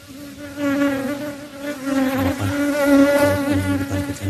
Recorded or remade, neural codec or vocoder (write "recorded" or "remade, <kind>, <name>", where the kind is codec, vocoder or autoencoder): recorded